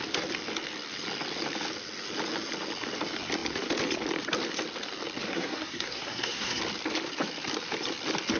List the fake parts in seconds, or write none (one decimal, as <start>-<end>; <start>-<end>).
5.3-6.6